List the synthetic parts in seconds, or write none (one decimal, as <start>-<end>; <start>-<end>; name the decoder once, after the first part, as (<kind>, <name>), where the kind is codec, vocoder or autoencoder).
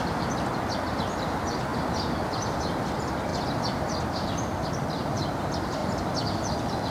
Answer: 0.0-1.7 (vocoder, BigVGAN v2); 2.2-3.3; 4.0-5.8